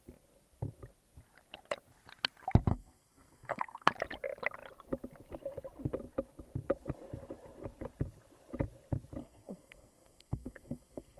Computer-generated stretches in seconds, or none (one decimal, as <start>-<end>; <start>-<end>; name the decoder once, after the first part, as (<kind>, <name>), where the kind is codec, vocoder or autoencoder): 2.7-3.9 (codec, SNAC); 9.2-11.2